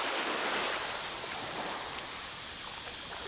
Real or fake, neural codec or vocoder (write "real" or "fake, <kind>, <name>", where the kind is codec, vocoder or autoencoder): real